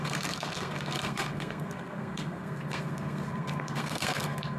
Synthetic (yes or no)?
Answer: yes